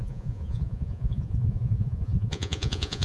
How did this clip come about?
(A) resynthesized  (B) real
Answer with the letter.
A